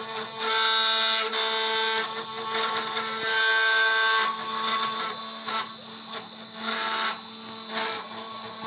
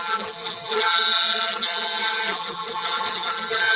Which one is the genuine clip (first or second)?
first